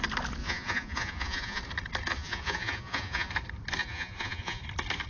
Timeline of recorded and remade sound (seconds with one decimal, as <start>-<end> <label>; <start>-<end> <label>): 0.0-0.4 recorded; 0.4-1.6 remade; 1.6-2.1 recorded; 2.1-3.3 remade; 3.3-3.8 recorded; 3.8-4.6 remade; 4.6-5.1 recorded